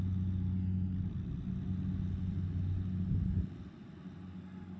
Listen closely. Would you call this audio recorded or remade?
recorded